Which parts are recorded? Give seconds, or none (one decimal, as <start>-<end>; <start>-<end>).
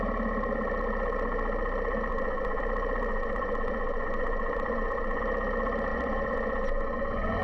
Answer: 0.0-2.1; 2.6-3.1; 5.2-5.9